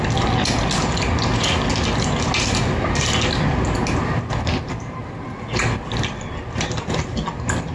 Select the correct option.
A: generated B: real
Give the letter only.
B